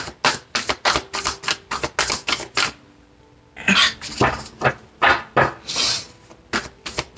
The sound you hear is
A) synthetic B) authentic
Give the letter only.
B